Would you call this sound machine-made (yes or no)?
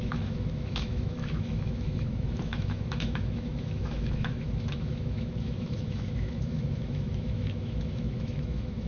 yes